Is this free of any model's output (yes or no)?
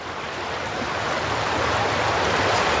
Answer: yes